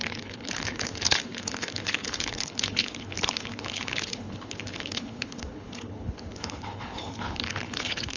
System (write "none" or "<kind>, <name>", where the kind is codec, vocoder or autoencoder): codec, HILCodec